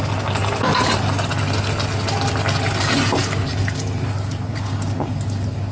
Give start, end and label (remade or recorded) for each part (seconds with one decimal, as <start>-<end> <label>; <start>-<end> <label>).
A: 0.0-4.5 recorded; 4.5-5.1 remade; 5.1-5.7 recorded